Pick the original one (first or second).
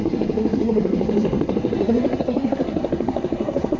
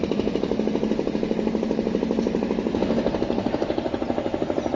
second